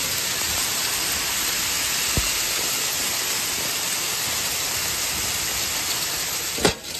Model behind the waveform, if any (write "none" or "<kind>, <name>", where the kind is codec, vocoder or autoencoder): none